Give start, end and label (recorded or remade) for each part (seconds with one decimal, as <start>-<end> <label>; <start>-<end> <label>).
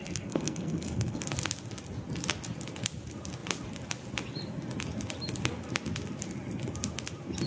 0.0-1.2 remade; 1.2-7.5 recorded